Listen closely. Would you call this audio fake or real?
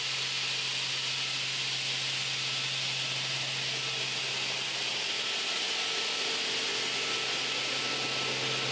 real